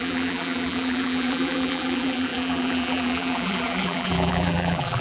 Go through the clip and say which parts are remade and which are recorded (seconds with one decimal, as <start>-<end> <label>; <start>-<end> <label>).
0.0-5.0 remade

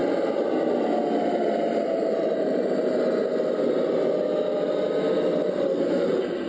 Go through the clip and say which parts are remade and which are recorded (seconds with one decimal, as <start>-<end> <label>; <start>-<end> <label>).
0.0-1.2 recorded; 1.2-3.3 remade; 3.3-5.4 recorded; 5.4-6.5 remade

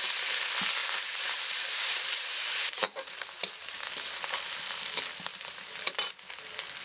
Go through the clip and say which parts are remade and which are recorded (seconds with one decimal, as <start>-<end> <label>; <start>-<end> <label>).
0.0-0.8 recorded; 0.8-3.5 remade; 3.5-5.3 recorded; 5.3-6.1 remade; 6.1-6.8 recorded

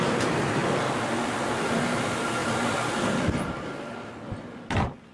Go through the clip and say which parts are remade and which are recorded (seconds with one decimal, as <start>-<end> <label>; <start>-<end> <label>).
0.0-0.6 remade; 0.6-1.8 recorded; 1.8-5.1 remade